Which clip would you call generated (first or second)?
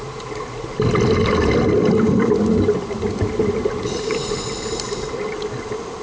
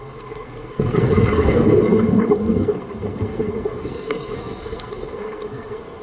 second